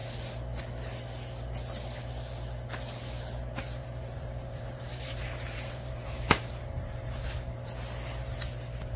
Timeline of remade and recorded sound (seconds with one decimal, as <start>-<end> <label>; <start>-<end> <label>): 0.0-3.8 recorded; 3.8-7.2 remade; 7.2-9.0 recorded